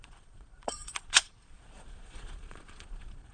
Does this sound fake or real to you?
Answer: fake